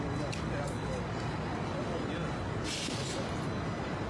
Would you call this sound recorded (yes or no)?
yes